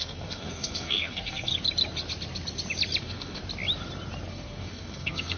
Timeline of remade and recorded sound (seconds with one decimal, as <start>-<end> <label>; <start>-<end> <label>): 0.0-1.5 remade; 1.5-3.0 recorded; 3.0-3.4 remade; 3.4-4.3 recorded; 4.3-5.4 remade

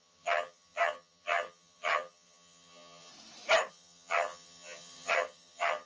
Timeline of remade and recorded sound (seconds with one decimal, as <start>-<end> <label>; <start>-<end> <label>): 0.0-3.1 remade; 3.1-3.7 recorded; 3.7-5.9 remade

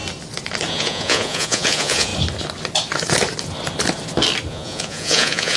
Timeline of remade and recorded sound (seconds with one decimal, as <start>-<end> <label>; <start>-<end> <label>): 0.0-0.7 recorded; 0.7-2.1 remade; 2.1-4.5 recorded; 4.5-5.6 remade

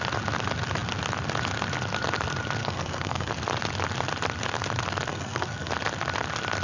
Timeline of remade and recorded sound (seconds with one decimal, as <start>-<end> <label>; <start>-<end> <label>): 0.0-2.6 recorded; 2.6-3.3 remade; 3.3-5.1 recorded; 5.1-5.7 remade; 5.7-6.6 recorded

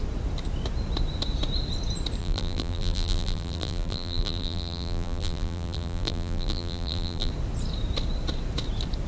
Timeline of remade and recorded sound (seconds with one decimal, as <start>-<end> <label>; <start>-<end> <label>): 0.0-2.2 recorded; 2.2-7.3 remade; 7.3-9.1 recorded

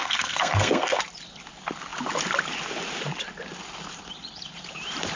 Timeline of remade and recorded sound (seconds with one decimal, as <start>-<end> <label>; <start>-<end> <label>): 0.0-1.0 remade; 1.0-5.2 recorded

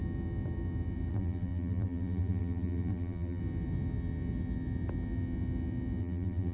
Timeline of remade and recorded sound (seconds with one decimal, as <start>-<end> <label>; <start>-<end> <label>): 0.0-1.1 recorded; 1.1-3.4 remade; 3.4-6.0 recorded; 6.0-6.5 remade